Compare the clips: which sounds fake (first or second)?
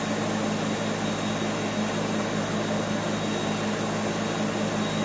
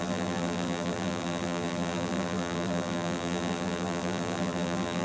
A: second